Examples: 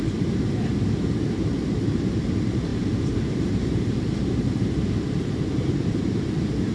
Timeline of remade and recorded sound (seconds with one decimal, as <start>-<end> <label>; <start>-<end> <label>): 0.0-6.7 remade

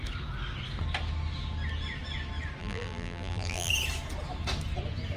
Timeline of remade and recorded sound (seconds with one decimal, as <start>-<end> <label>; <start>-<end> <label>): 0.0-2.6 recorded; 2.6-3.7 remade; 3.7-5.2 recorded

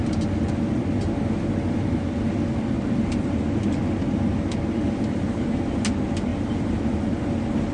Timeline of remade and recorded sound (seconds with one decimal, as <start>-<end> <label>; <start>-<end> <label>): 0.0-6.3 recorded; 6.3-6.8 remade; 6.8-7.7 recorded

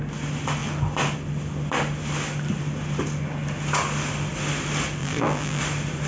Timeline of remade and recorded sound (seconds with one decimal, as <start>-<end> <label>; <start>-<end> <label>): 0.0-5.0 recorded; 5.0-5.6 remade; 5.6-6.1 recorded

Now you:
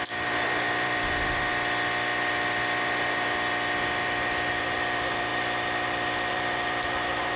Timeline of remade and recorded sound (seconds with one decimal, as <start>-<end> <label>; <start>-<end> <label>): 0.0-1.5 remade; 1.5-4.6 recorded; 4.6-5.3 remade; 5.3-6.3 recorded; 6.3-7.4 remade

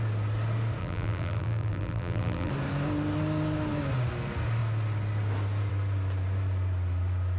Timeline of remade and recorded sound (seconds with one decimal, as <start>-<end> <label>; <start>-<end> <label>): 0.0-0.8 recorded; 0.8-2.5 remade; 2.5-7.4 recorded

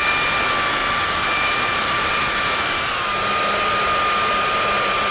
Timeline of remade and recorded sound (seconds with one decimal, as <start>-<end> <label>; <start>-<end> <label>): 0.0-0.8 recorded; 0.8-3.2 remade; 3.2-5.1 recorded

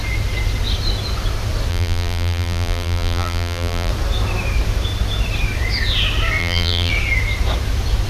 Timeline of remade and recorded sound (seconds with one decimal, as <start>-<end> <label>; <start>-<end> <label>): 0.0-1.7 recorded; 1.7-3.9 remade; 3.9-6.4 recorded; 6.4-6.9 remade; 6.9-8.1 recorded